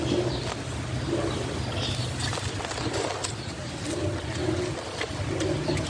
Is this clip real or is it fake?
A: real